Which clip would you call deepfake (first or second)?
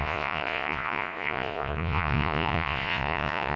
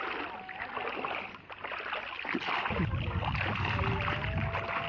first